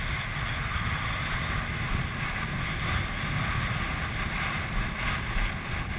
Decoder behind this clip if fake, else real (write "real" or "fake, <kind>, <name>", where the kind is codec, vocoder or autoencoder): real